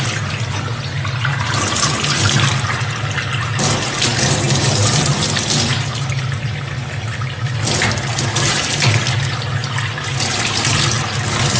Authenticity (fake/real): real